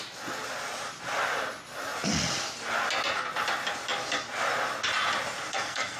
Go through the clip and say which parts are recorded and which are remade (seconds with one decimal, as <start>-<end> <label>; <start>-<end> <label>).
0.0-5.5 recorded; 5.5-6.0 remade